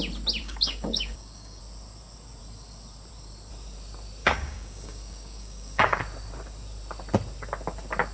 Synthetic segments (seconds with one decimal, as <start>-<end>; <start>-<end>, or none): 0.4-1.6; 4.2-6.0